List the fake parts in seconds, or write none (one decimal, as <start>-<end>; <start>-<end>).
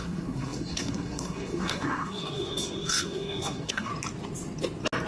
0.0-3.9